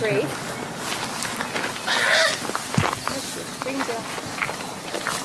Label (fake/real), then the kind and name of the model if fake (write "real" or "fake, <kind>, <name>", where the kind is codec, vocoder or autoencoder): real